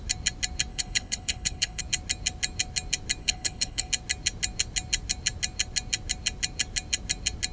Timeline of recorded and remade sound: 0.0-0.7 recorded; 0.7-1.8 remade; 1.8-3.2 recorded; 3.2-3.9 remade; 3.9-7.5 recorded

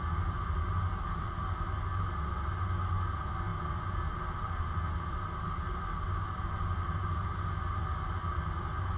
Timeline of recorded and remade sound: 0.0-9.0 recorded

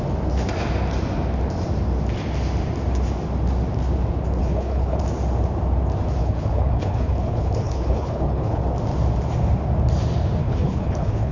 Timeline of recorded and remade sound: 0.0-4.4 recorded; 4.4-5.0 remade; 5.0-6.2 recorded; 6.2-8.6 remade; 8.6-10.4 recorded; 10.4-11.3 remade

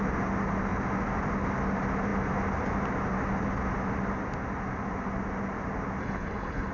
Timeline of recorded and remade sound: 0.0-6.0 recorded; 6.0-6.7 remade

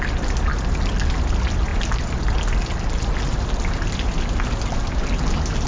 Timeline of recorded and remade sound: 0.0-5.7 recorded